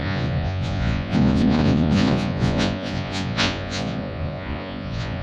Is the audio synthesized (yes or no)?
yes